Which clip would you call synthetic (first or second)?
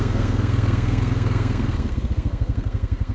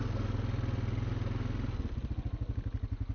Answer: first